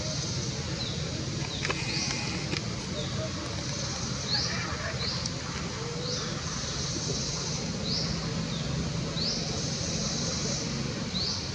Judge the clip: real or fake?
real